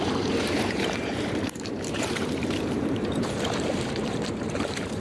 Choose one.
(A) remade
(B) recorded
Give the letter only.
A